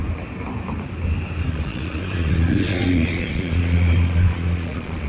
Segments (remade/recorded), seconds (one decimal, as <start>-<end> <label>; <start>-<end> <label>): 0.0-1.5 recorded; 1.5-5.1 remade